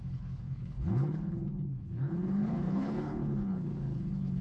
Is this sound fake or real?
fake